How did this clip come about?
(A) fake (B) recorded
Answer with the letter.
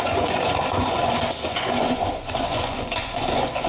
A